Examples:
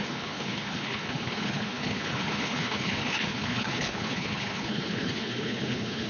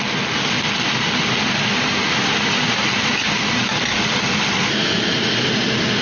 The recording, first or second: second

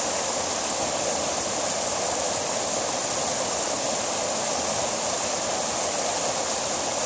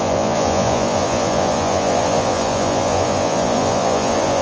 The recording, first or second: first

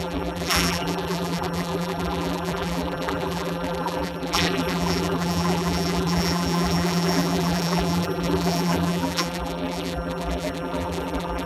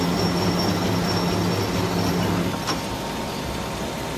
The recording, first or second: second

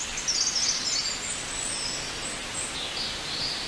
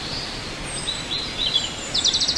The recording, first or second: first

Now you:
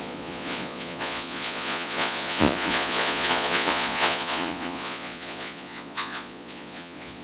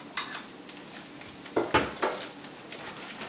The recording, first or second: second